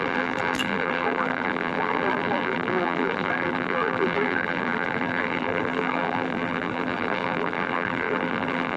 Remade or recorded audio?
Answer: remade